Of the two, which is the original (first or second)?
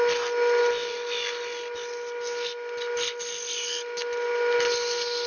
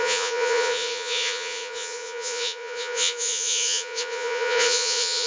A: first